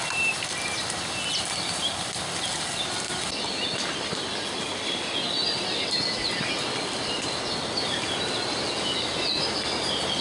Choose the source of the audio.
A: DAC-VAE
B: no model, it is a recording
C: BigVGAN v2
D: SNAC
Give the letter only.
B